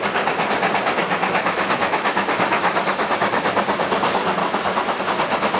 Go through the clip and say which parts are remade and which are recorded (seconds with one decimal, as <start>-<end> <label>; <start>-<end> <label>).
0.0-1.0 recorded; 1.0-3.2 remade; 3.2-4.4 recorded; 4.4-5.0 remade; 5.0-5.6 recorded